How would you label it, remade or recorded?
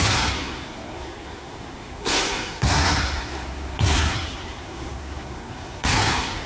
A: remade